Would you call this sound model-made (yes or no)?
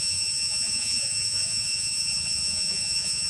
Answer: yes